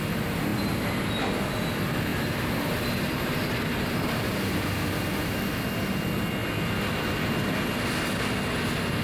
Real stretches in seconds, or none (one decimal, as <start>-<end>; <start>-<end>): 0.0-2.1; 5.3-9.0